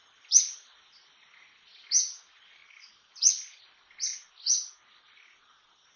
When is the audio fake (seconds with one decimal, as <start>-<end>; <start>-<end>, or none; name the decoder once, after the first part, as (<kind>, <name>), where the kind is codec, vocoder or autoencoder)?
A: none